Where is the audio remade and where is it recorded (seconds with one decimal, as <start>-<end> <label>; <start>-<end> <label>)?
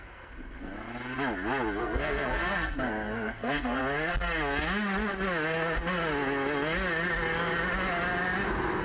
0.0-0.7 remade; 0.7-1.8 recorded; 1.8-3.8 remade; 3.8-8.8 recorded